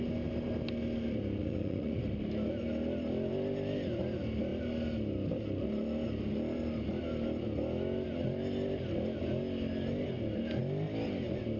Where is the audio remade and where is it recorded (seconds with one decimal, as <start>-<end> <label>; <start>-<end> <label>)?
0.0-1.4 recorded; 1.4-2.0 remade; 2.0-11.6 recorded